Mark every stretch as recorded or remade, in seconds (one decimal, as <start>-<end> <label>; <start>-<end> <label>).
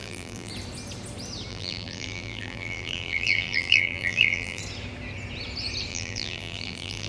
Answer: 0.0-0.5 remade; 0.5-1.5 recorded; 1.5-4.6 remade; 4.6-5.9 recorded; 5.9-7.1 remade